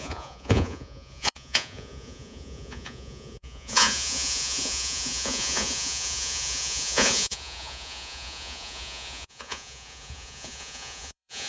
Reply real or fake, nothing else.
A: fake